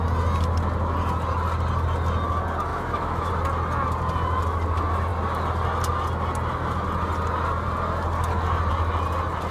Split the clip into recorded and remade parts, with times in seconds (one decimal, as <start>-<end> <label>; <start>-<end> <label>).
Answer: 0.0-2.7 recorded; 2.7-3.3 remade; 3.3-9.5 recorded